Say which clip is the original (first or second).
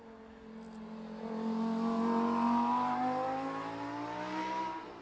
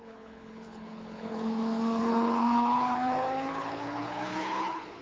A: first